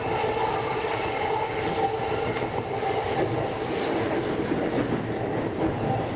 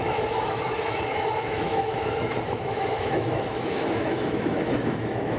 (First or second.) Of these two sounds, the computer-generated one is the second